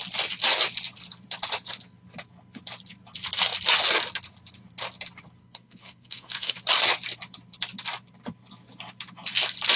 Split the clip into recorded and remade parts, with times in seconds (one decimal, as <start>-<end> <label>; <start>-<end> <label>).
0.0-5.4 recorded; 5.4-6.5 remade; 6.5-9.8 recorded